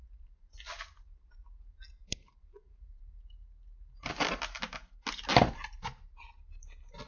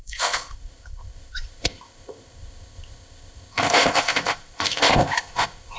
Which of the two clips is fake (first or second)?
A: second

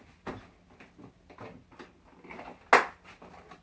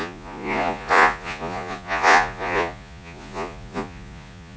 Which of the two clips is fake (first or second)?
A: second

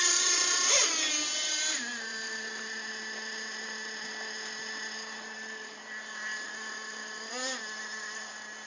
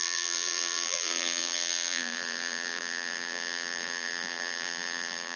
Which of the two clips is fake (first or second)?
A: second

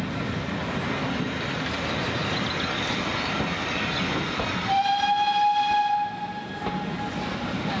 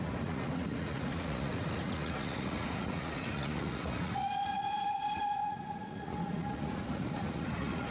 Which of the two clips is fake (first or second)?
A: second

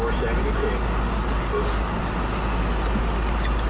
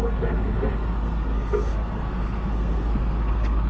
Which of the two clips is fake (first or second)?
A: second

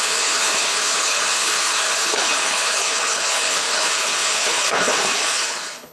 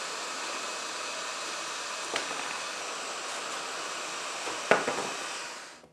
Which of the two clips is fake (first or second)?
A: first